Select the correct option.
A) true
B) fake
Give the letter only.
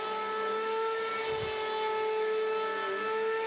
A